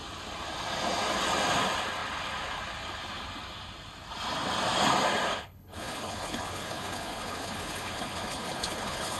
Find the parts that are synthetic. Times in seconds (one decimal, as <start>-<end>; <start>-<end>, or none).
5.3-9.2